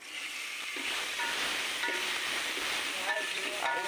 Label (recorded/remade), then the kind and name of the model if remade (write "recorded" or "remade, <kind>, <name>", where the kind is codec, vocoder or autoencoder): remade, vocoder, BigVGAN v2